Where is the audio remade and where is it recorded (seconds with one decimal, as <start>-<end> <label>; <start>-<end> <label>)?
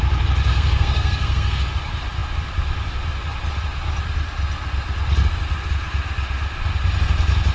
0.0-0.5 recorded; 0.5-1.6 remade; 1.6-7.5 recorded